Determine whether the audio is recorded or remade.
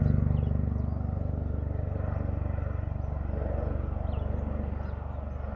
recorded